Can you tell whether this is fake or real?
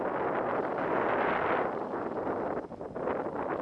real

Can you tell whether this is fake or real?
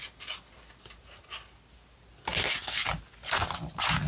real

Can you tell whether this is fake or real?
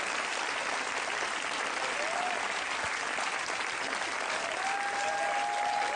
real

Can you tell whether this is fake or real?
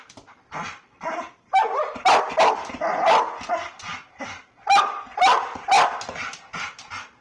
real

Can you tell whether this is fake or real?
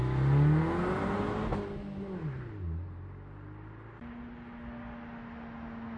real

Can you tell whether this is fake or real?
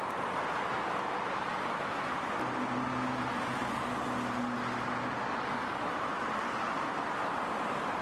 real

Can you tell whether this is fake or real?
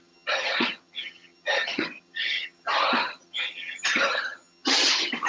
fake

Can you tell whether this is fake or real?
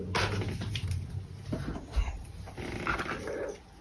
real